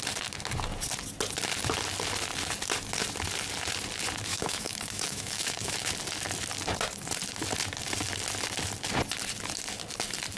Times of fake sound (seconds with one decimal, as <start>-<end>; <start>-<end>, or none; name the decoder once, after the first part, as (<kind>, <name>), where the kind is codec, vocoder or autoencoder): 4.3-5.9 (autoencoder, DAC-VAE)